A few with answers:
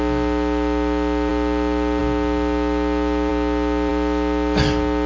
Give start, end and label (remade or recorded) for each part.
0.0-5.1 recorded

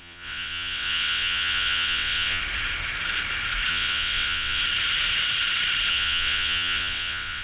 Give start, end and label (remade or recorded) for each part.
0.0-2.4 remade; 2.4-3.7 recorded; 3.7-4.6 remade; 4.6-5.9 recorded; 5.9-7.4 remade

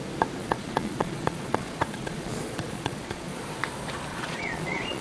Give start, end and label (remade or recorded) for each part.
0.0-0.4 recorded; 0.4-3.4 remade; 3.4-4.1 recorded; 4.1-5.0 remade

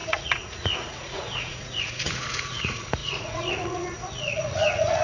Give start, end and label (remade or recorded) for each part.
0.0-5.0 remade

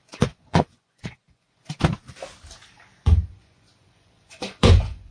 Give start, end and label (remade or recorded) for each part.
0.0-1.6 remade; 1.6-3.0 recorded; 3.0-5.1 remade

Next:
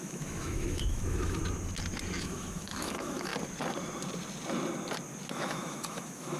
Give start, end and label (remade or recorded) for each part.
0.0-1.4 remade; 1.4-2.2 recorded; 2.2-3.3 remade; 3.3-5.3 recorded; 5.3-6.4 remade